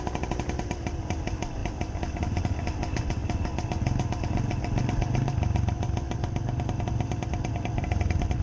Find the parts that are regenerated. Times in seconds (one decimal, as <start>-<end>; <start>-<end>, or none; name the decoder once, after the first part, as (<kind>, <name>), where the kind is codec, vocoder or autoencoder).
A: none